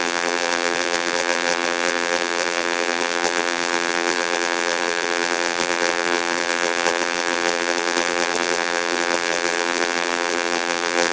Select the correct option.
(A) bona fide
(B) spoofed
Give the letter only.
B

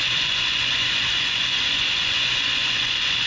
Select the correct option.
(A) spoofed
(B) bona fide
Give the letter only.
A